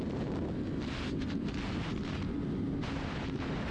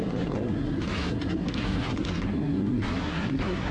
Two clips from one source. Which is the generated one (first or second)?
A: second